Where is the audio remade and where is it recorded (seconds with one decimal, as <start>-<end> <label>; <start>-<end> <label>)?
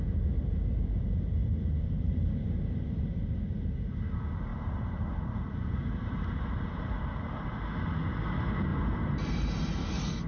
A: 0.0-1.4 recorded; 1.4-2.5 remade; 2.5-4.5 recorded; 4.5-7.6 remade; 7.6-8.7 recorded; 8.7-9.6 remade; 9.6-10.3 recorded